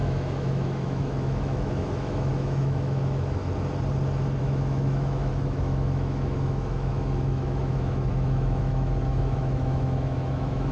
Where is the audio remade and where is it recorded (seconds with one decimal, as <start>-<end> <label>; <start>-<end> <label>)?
0.0-3.4 remade; 3.4-4.4 recorded; 4.4-10.7 remade